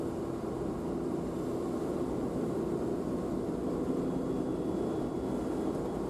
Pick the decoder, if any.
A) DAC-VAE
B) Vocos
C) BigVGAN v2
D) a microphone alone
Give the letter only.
D